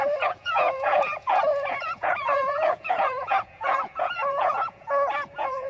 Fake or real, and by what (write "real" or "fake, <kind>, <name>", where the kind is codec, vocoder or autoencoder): fake, vocoder, Vocos